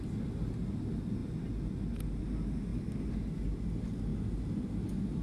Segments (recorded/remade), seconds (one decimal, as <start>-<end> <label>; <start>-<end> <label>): 0.0-2.7 recorded; 2.7-3.4 remade; 3.4-5.2 recorded